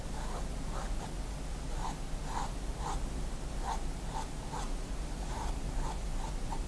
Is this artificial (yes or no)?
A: no